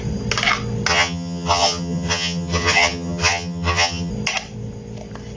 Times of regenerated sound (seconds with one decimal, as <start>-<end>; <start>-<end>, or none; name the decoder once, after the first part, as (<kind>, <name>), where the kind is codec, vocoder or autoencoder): 0.9-4.1 (vocoder, HiFi-GAN)